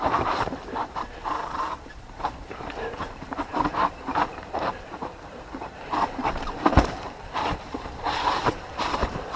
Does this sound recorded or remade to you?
remade